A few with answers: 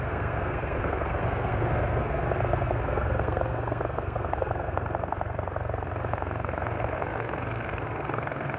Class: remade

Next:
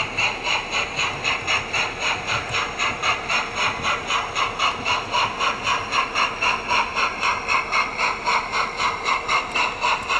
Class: recorded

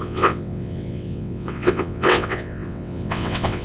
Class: remade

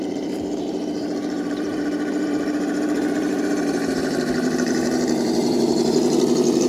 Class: remade